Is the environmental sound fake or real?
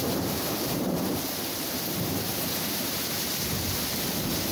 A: fake